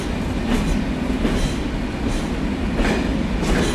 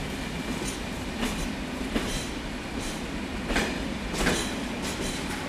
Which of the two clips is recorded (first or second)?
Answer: first